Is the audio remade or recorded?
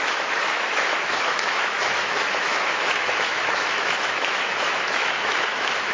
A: remade